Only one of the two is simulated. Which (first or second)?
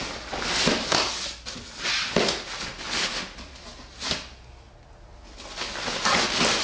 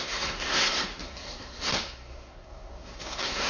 second